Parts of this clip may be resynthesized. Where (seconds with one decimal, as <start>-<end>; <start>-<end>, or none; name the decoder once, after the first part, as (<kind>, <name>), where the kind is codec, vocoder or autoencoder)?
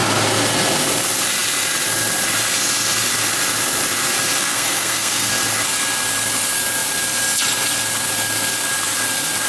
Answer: 4.4-5.3 (codec, SNAC)